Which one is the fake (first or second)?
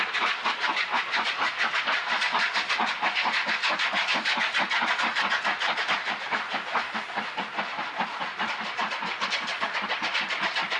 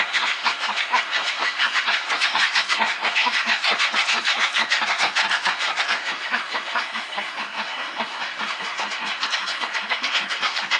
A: second